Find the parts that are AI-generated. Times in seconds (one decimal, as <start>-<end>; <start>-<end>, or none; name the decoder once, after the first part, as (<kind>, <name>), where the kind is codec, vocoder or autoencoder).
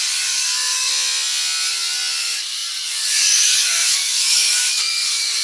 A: 0.0-0.9 (codec, DAC); 2.2-5.4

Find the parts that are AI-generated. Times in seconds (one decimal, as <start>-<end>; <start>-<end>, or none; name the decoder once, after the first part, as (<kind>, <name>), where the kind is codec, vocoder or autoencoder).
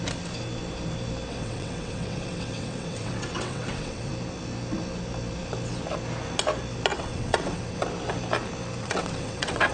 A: 1.3-4.1 (vocoder, WaveNeXt); 6.9-7.8; 8.8-9.7